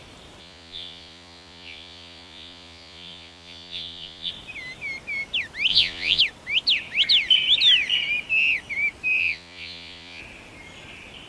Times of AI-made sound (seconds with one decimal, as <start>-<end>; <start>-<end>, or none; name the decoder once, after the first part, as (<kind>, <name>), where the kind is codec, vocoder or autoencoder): 0.4-4.3 (vocoder, Vocos); 5.7-6.2; 9.2-10.2